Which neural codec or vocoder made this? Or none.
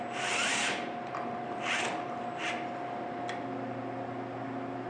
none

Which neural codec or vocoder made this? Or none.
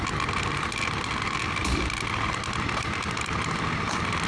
vocoder, BigVGAN v2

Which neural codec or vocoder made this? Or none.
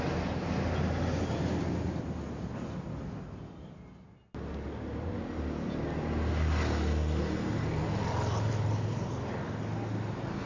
none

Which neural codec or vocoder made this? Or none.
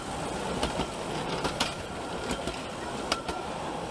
none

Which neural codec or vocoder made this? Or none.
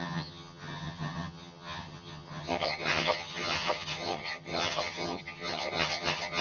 vocoder, HiFi-GAN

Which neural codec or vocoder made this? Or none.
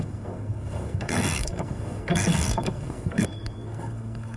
codec, SNAC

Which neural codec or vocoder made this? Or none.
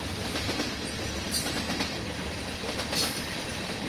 none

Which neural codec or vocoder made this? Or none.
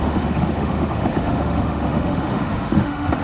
autoencoder, DAC-VAE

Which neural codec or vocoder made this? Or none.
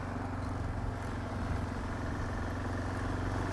none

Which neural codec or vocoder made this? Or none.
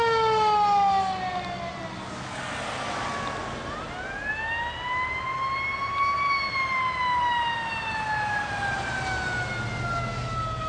none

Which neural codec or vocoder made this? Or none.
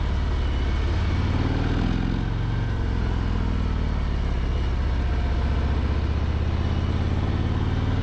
none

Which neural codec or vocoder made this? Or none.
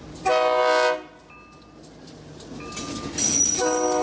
none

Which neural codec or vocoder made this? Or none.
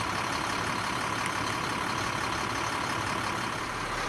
none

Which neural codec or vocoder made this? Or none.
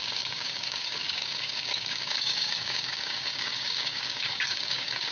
codec, DAC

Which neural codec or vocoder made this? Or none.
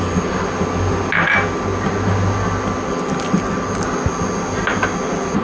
none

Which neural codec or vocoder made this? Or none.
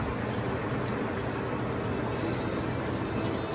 none